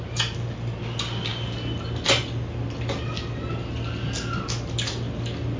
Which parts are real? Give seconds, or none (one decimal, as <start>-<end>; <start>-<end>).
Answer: 0.0-5.6